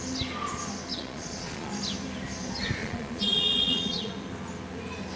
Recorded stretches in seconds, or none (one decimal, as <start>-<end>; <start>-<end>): 0.0-0.9; 1.7-2.8; 4.1-5.2